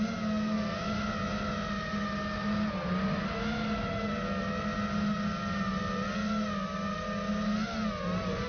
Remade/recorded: recorded